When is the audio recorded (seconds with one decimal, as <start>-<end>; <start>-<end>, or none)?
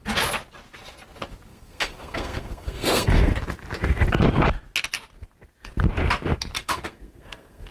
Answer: 0.0-1.5; 3.3-6.6